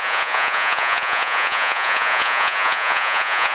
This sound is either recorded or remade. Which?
remade